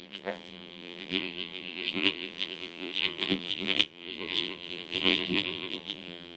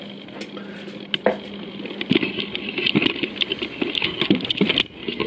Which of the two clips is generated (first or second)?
first